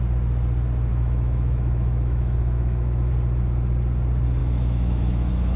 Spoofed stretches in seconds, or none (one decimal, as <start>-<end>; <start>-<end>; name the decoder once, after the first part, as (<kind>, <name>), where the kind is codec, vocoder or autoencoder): 0.9-3.1 (autoencoder, DAC-VAE); 4.4-5.6